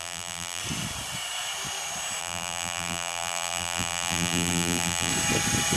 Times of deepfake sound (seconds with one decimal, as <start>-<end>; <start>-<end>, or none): 0.0-0.6; 2.2-5.1